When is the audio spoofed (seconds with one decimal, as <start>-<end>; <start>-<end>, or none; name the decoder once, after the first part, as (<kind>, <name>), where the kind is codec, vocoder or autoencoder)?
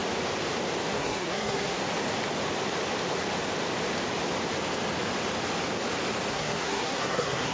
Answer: 0.9-1.8 (codec, SNAC); 6.3-7.5